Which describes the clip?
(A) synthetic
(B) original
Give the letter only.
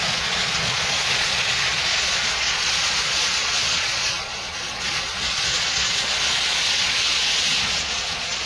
A